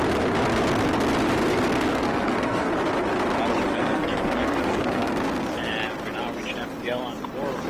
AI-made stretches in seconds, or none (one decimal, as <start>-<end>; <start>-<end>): 1.9-2.7; 3.7-5.1